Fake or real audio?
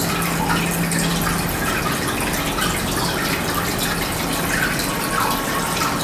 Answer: real